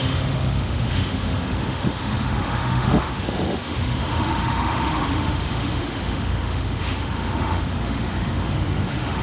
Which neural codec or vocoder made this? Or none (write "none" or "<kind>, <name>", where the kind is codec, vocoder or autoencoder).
autoencoder, DAC-VAE